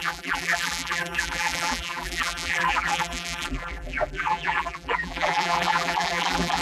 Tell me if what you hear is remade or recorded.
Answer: remade